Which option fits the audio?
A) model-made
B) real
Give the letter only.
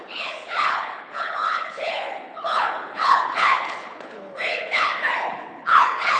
A